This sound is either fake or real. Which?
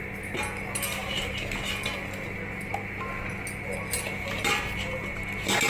real